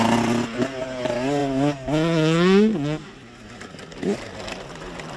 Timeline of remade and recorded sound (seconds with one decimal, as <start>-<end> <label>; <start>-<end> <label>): 0.0-5.2 recorded